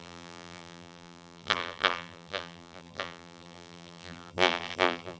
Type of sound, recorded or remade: remade